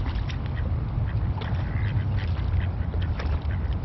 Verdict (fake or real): fake